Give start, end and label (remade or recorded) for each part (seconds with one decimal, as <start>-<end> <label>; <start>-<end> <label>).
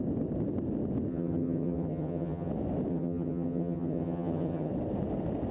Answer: 0.0-1.1 recorded; 1.1-2.5 remade; 2.5-2.9 recorded; 2.9-4.7 remade; 4.7-5.5 recorded